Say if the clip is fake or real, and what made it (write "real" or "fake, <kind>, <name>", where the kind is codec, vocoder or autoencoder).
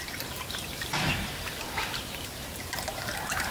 fake, vocoder, BigVGAN v2